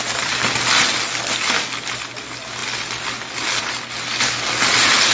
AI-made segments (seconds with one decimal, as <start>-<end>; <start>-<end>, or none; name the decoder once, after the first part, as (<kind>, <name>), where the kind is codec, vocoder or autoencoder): none